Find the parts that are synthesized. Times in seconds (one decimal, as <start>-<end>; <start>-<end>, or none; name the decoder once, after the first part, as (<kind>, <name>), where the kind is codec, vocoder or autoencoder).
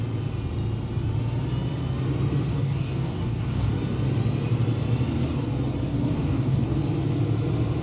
2.5-3.7 (codec, DAC); 5.9-6.8